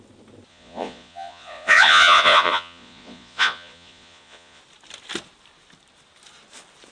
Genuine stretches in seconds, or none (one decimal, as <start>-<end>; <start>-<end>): 0.0-0.5; 4.6-6.9